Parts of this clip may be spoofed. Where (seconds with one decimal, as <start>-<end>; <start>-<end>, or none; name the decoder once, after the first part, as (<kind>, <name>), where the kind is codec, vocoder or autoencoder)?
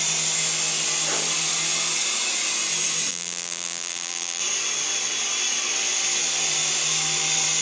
3.1-4.4 (vocoder, BigVGAN v2)